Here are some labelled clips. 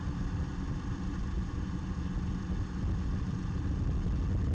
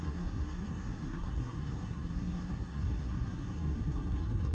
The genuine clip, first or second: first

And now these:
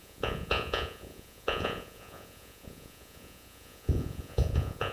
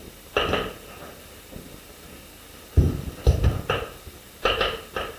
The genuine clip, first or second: second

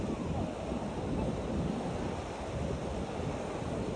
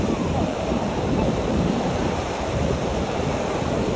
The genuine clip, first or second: first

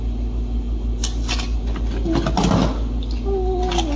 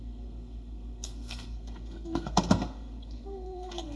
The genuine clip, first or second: first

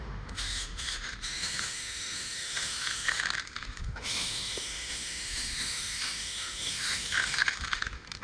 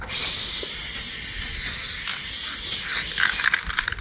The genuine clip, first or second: second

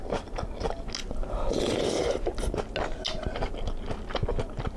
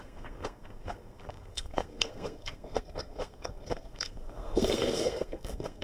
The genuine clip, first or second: first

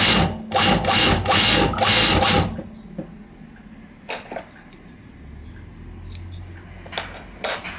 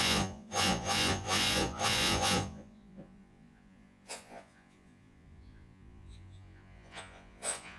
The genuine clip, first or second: first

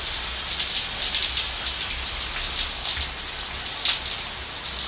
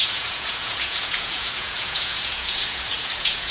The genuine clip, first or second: first